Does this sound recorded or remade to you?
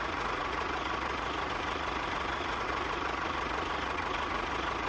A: remade